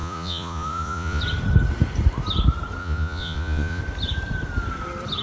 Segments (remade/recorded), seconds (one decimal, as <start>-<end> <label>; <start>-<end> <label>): 0.0-1.2 remade; 1.2-2.8 recorded; 2.8-3.8 remade; 3.8-5.2 recorded